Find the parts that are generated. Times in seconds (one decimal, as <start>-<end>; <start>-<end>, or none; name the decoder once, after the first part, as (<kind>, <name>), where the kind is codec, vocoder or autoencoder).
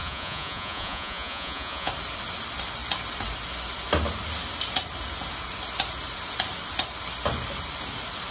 0.0-1.9 (vocoder, Vocos)